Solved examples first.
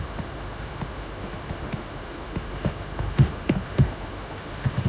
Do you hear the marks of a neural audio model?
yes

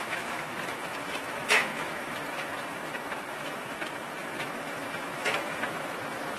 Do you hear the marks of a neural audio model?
yes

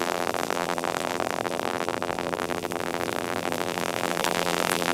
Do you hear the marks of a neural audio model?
yes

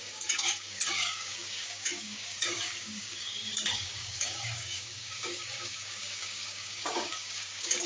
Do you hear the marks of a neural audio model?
yes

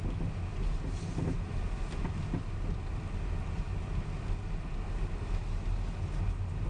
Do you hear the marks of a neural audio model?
no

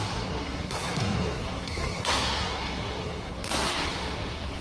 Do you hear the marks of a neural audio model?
yes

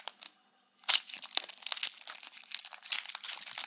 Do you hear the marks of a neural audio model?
no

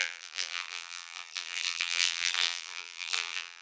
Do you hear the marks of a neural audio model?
yes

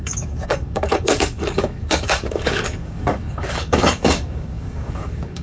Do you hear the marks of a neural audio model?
yes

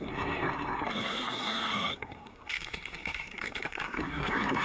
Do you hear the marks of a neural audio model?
yes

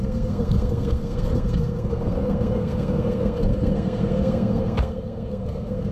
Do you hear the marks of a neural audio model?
yes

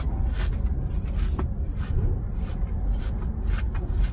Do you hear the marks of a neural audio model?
no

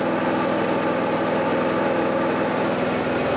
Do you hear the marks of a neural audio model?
no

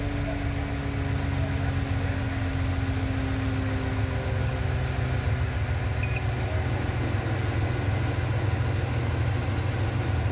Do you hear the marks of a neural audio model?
no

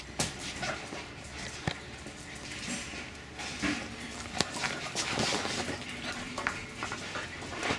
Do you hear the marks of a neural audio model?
no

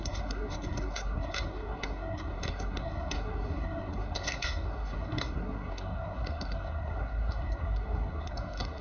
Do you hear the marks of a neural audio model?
yes